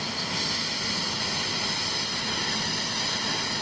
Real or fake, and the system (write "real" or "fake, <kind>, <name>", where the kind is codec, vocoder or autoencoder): real